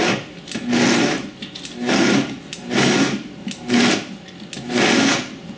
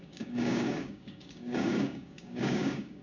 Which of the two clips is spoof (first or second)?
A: second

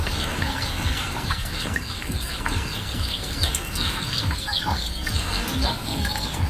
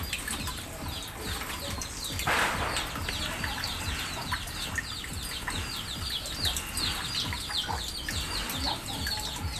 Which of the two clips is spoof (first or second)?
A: first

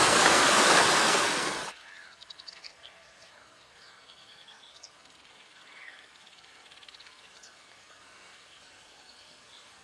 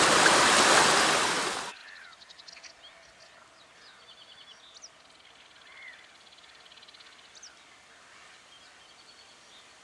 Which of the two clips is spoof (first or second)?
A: first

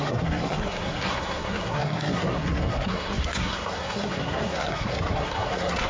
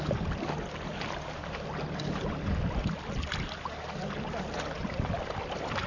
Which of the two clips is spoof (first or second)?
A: first